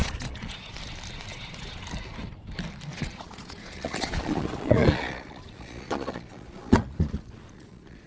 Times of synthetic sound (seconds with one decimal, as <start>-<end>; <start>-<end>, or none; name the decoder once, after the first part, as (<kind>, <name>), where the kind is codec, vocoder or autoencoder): 0.0-0.7 (vocoder, Vocos); 1.3-1.8; 2.9-8.1